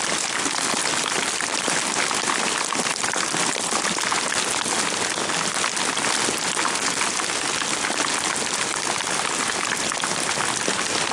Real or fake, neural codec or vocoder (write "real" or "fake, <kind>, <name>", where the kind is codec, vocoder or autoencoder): real